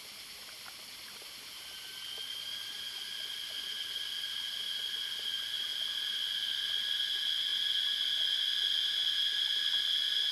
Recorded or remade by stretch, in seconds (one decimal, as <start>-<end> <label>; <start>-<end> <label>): 0.0-10.3 recorded